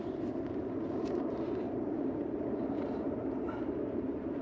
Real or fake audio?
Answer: fake